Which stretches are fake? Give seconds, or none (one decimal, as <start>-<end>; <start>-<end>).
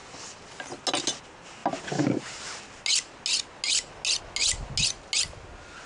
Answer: none